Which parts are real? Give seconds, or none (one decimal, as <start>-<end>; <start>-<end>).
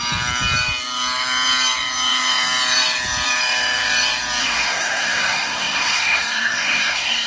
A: 0.0-4.4